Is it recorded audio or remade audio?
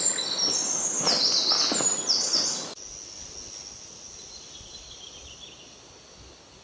recorded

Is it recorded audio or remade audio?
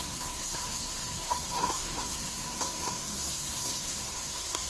remade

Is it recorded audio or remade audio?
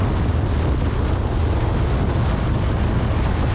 recorded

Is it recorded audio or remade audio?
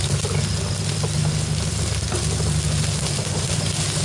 recorded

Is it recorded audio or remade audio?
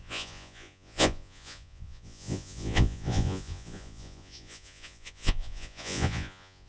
remade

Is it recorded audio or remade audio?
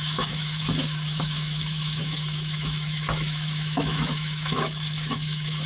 remade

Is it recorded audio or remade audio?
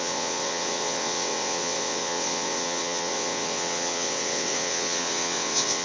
remade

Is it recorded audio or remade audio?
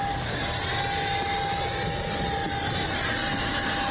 recorded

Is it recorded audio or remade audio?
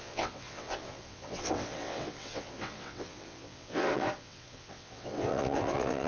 remade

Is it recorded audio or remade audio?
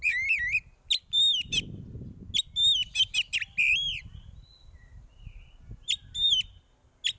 recorded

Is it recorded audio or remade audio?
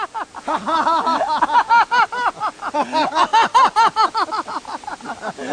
recorded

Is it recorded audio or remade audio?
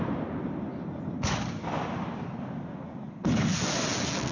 recorded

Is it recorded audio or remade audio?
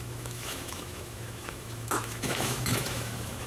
remade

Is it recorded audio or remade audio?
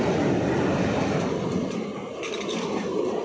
recorded